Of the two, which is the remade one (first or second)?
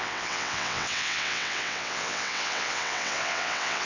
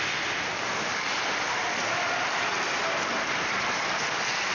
first